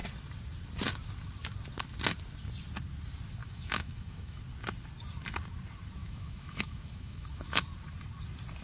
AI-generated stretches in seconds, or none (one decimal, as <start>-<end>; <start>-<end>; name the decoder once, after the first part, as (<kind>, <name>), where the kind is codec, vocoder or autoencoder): 3.4-4.4 (autoencoder, DAC-VAE); 6.0-7.5